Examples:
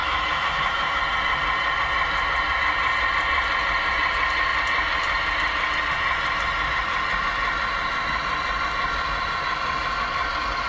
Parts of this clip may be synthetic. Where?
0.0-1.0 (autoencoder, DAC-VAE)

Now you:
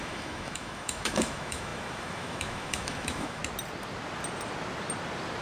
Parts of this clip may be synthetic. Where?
0.0-3.4 (autoencoder, DAC-VAE)